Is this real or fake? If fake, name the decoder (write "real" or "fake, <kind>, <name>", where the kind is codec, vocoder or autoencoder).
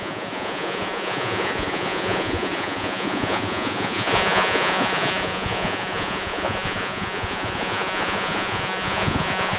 fake, vocoder, Vocos